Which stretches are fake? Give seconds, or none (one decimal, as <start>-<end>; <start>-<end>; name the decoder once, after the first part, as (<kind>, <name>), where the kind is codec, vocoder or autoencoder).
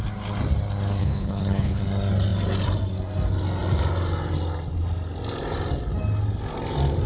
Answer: 1.0-1.8 (codec, HILCodec)